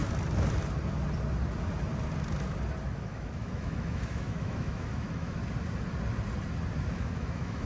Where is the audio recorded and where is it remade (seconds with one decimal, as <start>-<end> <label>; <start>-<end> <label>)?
0.0-2.9 recorded; 2.9-5.4 remade; 5.4-6.8 recorded; 6.8-7.7 remade